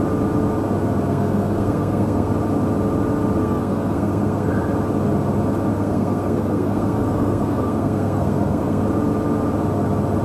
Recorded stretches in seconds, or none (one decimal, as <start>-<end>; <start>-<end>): 0.0-1.1; 2.3-3.4; 4.5-5.7; 8.8-10.2